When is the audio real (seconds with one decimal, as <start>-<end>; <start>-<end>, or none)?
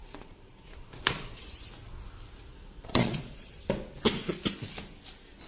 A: 1.4-2.4; 3.6-5.5